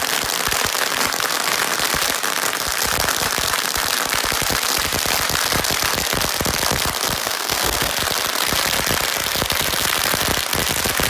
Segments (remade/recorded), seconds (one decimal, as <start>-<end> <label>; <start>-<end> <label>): 0.0-7.2 recorded; 7.2-7.9 remade; 7.9-11.1 recorded